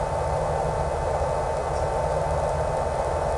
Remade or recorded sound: recorded